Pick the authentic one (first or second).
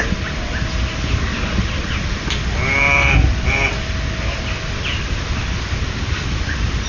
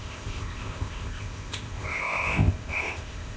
first